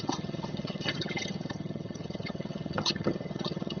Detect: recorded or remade remade